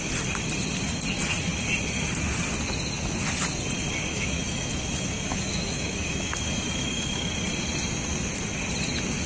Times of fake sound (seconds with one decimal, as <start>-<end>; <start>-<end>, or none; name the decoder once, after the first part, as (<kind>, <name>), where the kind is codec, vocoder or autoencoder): 4.1-7.3 (autoencoder, DAC-VAE)